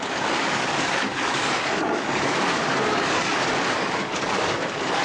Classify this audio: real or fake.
fake